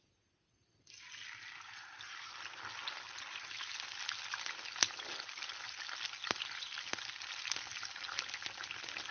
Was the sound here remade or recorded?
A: recorded